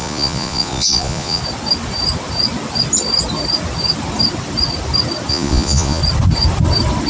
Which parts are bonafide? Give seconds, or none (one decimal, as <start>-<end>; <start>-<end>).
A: 1.4-5.3; 6.0-7.1